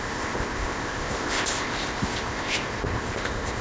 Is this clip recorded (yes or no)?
no